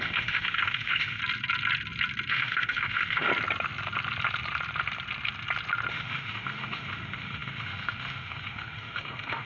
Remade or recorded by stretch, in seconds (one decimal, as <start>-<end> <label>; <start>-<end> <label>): 0.0-1.2 remade; 1.2-2.3 recorded; 2.3-3.3 remade; 3.3-5.9 recorded; 5.9-9.5 remade